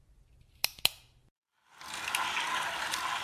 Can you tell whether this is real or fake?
real